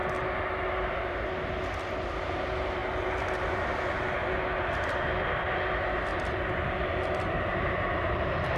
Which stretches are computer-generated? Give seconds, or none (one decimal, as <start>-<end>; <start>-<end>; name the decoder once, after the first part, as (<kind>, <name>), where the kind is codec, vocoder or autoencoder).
none